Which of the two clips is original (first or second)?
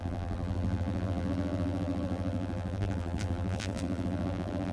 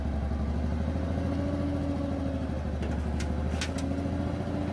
second